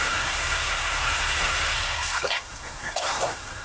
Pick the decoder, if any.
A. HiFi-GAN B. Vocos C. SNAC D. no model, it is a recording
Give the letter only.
C